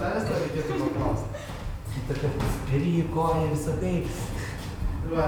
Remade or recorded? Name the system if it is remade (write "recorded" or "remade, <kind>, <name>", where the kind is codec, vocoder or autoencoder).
recorded